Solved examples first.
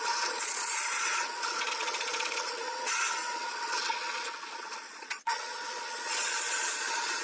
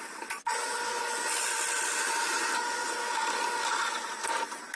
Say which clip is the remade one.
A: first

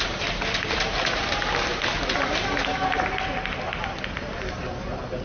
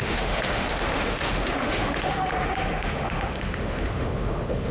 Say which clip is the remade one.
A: second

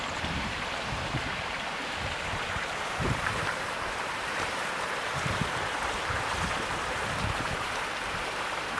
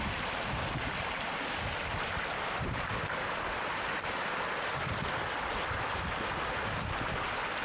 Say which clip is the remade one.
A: first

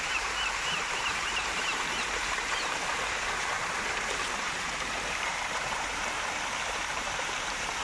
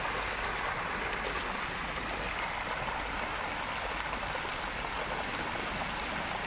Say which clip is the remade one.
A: first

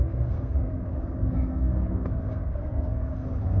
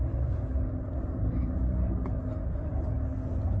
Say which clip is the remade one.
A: first